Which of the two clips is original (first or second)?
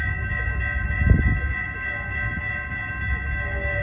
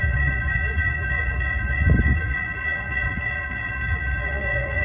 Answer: first